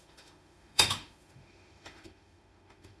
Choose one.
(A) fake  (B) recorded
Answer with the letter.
A